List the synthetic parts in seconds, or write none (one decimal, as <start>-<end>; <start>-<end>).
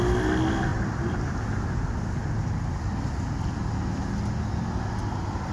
none